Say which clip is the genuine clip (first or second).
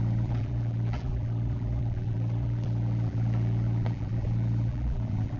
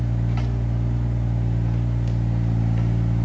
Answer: second